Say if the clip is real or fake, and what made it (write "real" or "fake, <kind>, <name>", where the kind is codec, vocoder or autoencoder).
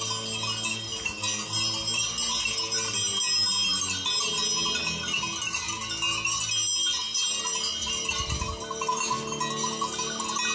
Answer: real